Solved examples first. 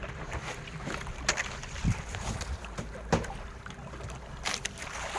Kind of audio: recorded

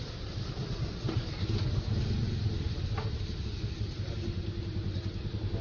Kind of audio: recorded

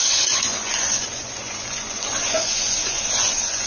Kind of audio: remade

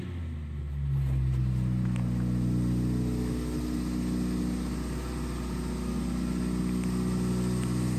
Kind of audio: recorded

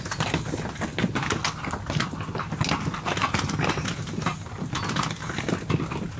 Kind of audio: recorded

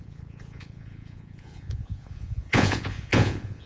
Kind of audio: remade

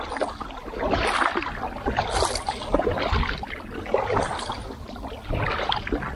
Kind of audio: recorded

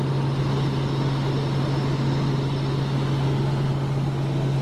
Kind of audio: recorded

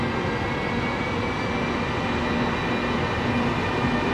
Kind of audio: recorded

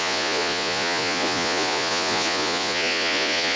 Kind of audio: remade